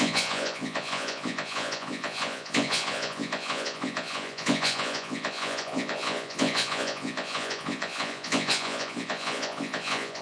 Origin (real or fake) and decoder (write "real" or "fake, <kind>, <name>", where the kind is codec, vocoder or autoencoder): fake, vocoder, Vocos